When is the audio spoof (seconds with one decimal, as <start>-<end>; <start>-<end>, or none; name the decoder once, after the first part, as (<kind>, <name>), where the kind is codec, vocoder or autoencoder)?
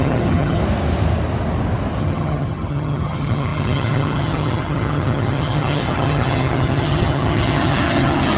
0.0-0.6 (vocoder, HiFi-GAN); 2.0-8.4